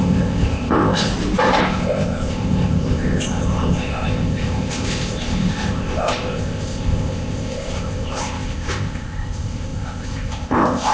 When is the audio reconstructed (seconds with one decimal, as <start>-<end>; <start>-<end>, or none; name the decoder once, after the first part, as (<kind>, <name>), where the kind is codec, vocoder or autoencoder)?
0.0-1.1 (codec, ZipCodec); 1.6-10.9